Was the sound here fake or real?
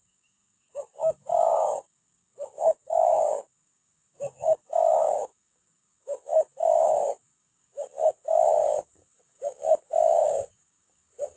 fake